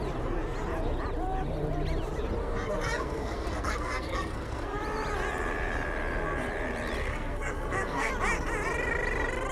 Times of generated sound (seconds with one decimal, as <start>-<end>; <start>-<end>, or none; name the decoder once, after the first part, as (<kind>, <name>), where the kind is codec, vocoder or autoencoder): 2.4-4.8 (codec, SNAC); 7.0-8.1

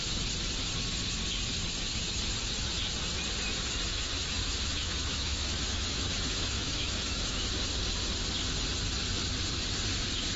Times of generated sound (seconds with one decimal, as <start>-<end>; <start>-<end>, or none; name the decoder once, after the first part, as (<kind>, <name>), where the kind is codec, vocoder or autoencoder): 4.4-7.5 (autoencoder, DAC-VAE)

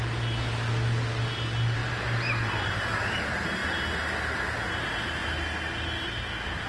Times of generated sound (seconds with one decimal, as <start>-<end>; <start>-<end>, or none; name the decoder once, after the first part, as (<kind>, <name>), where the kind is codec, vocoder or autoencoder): 1.8-2.7 (vocoder, BigVGAN v2)

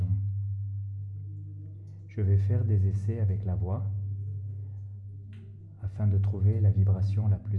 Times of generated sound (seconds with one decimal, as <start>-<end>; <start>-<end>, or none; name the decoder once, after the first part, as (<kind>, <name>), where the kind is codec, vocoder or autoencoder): none

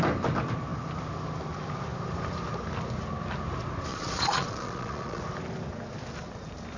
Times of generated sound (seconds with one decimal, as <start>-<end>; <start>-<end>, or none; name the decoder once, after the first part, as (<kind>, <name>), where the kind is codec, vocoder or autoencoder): 3.9-5.2 (vocoder, Vocos)

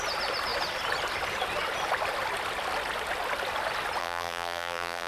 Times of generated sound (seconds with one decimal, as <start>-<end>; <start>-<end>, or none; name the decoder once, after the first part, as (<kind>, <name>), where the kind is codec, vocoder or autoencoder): 4.0-5.1 (vocoder, BigVGAN v2)